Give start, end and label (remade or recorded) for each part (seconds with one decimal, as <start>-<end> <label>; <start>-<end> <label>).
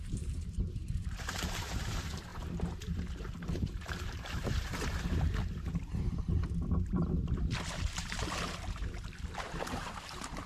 0.0-10.5 remade